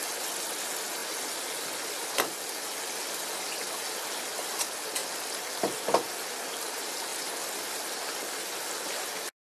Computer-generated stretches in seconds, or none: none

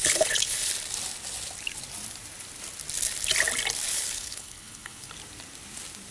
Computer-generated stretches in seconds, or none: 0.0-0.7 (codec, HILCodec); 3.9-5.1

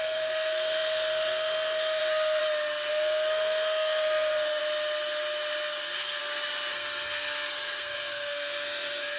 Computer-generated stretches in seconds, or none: 0.0-2.4 (codec, SNAC); 2.9-4.6; 5.8-6.2; 6.7-9.2

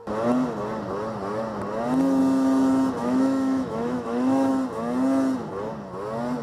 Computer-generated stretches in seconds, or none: 3.0-4.5 (autoencoder, DAC-VAE)

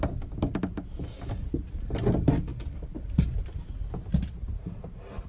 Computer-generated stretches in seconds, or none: none